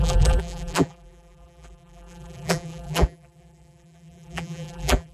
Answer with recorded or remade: remade